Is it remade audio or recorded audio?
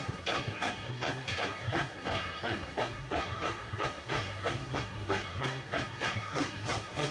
remade